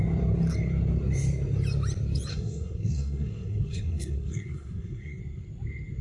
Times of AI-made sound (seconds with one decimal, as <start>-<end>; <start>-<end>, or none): 2.3-5.2